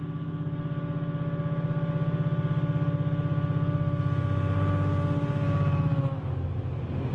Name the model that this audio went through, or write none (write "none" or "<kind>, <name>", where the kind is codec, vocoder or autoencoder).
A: none